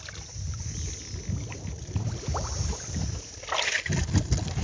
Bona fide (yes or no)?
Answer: yes